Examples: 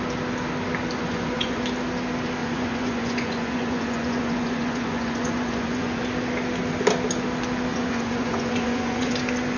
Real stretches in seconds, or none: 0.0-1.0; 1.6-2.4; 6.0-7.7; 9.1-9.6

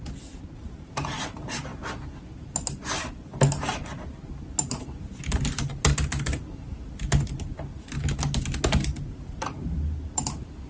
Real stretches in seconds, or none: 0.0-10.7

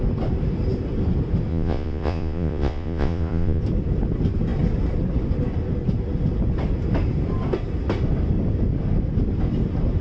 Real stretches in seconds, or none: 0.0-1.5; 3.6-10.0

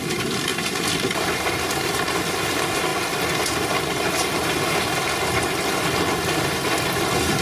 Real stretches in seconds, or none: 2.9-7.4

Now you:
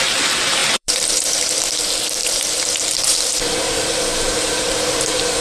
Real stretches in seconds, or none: 0.0-0.6; 1.8-2.2